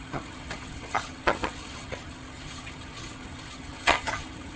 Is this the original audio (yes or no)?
no